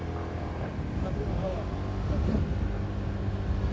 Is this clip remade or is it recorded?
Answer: recorded